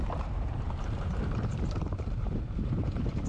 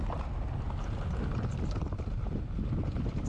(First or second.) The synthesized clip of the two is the first